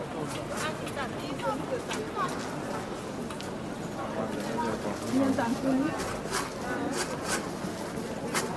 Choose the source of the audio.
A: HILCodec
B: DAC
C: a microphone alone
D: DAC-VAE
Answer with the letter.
C